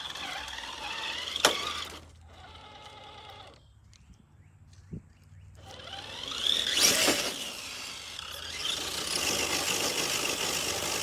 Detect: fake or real real